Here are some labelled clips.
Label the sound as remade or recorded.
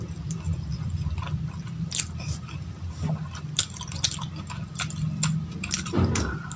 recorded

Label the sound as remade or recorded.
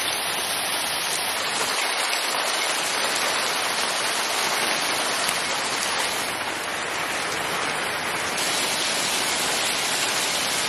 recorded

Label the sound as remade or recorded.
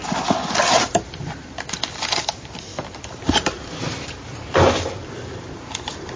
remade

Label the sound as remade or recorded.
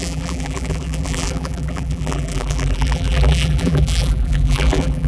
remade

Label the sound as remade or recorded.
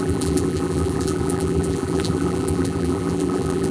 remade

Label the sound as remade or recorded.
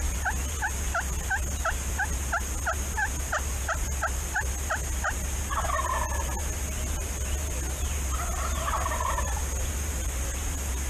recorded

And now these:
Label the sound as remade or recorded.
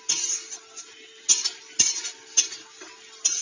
recorded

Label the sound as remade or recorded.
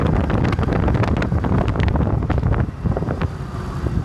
recorded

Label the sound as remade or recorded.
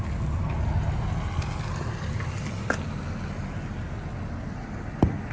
recorded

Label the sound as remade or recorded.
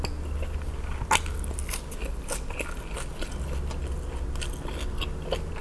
recorded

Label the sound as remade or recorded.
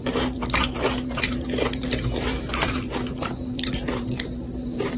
remade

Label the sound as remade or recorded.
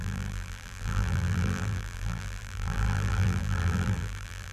remade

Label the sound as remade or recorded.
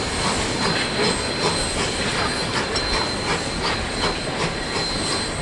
recorded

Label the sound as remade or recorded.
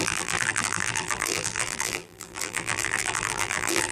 remade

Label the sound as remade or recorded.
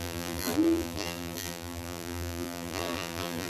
remade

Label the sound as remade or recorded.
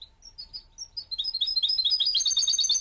recorded